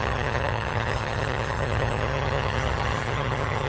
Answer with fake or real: fake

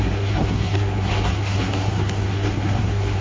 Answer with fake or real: fake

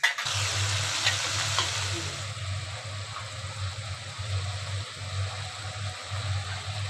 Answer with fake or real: real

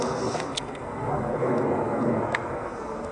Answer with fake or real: fake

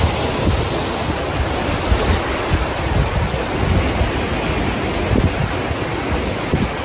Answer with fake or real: real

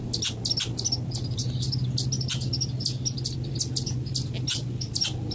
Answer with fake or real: real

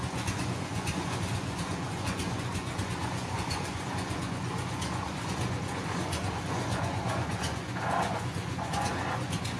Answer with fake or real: fake